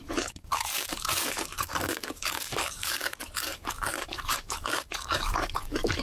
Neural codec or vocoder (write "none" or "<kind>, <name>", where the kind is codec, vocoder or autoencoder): codec, DAC